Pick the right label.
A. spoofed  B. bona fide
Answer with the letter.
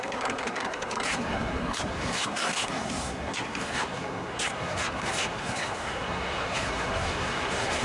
A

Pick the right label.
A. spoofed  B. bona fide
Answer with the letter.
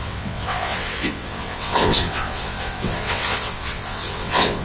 A